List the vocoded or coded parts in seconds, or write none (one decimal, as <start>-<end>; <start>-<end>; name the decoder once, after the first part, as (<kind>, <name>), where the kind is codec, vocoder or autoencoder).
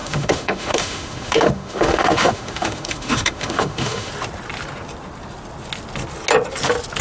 0.0-4.1 (autoencoder, DAC-VAE)